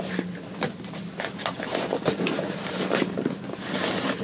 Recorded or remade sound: recorded